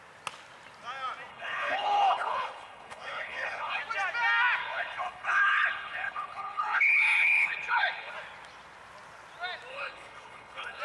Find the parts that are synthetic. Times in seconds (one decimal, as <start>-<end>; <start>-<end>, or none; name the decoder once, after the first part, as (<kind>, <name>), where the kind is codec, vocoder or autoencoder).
1.3-3.8 (codec, HILCodec); 4.6-8.1; 9.7-10.8